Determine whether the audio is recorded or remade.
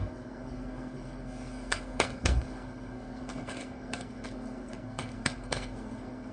remade